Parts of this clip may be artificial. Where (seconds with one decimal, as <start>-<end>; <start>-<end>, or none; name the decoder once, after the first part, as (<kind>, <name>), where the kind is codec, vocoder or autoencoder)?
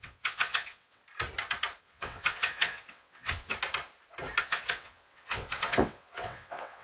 0.0-1.0 (vocoder, WaveNeXt); 1.8-3.5; 4.4-6.8